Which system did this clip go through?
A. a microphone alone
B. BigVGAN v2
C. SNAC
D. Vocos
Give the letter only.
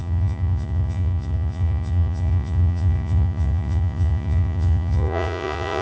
D